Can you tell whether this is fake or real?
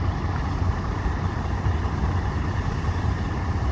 fake